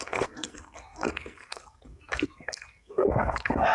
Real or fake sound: fake